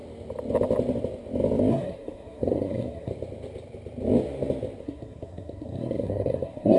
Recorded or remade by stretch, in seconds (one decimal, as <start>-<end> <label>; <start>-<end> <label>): 0.0-1.7 recorded; 1.7-3.1 remade; 3.1-4.8 recorded; 4.8-6.8 remade